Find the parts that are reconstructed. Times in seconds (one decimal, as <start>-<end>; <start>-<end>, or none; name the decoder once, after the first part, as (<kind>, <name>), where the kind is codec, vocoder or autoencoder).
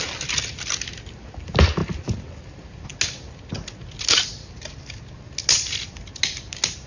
none